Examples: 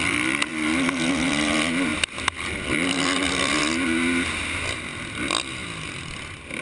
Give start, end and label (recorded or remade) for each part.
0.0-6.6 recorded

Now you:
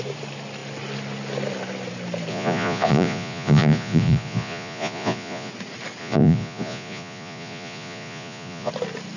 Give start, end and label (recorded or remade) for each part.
0.0-2.3 recorded; 2.3-5.5 remade; 5.5-6.0 recorded; 6.0-8.7 remade; 8.7-9.2 recorded

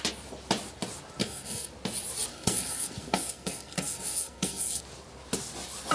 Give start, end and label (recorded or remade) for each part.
0.0-1.2 recorded; 1.2-1.7 remade; 1.7-2.3 recorded; 2.3-4.8 remade; 4.8-5.9 recorded